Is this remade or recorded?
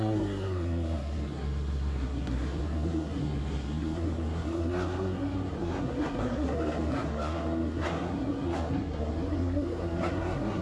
remade